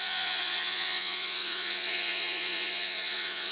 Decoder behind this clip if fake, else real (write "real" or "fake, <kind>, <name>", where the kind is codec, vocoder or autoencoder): fake, vocoder, Vocos